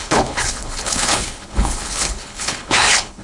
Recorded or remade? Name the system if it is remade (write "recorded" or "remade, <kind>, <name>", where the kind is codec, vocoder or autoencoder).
remade, codec, HILCodec